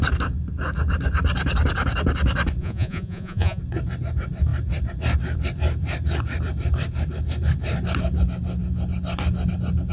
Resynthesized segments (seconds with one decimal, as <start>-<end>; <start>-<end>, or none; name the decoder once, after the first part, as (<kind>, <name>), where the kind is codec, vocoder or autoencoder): 2.6-3.6 (vocoder, Vocos)